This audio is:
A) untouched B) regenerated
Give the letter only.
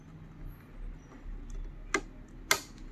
A